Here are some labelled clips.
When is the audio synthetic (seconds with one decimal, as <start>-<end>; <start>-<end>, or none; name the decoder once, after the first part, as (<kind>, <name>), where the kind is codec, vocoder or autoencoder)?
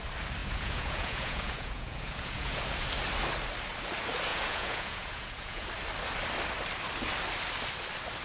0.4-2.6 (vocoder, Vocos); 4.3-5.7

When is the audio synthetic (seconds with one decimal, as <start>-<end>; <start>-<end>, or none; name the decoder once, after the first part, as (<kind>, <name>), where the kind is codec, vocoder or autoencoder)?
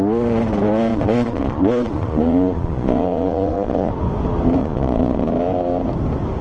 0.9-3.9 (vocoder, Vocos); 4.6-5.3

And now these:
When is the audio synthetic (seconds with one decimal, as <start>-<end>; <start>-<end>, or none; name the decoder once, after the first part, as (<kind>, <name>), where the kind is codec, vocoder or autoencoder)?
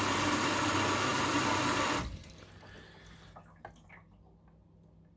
none